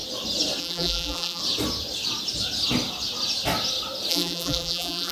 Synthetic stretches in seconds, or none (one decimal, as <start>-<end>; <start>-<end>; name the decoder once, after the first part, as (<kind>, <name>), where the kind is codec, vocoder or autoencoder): 0.6-1.4 (vocoder, BigVGAN v2); 4.1-5.1